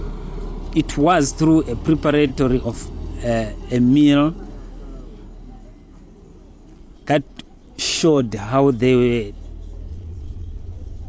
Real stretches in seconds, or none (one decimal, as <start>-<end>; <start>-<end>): 0.0-2.3; 2.8-6.8; 8.2-9.9